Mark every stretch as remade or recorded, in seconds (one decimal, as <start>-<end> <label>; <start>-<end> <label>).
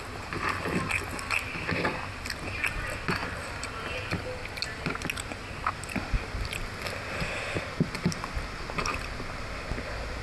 0.0-10.2 recorded